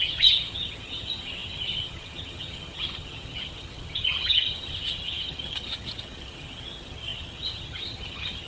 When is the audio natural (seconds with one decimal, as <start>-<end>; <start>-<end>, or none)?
none